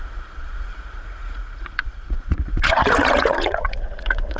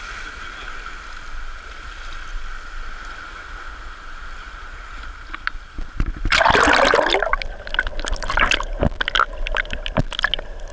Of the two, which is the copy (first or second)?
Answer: first